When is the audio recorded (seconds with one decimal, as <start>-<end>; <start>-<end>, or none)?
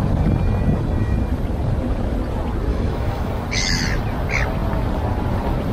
0.0-2.7; 3.3-5.7